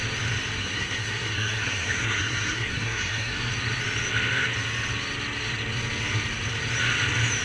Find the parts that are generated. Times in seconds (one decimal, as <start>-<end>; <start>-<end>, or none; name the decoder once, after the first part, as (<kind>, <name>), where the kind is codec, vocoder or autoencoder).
0.6-3.5 (codec, SNAC)